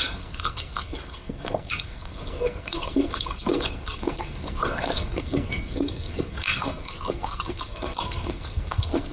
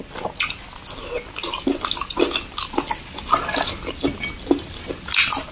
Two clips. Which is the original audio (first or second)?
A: second